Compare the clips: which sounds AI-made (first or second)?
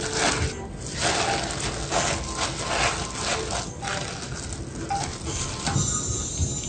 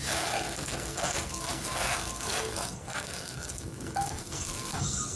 second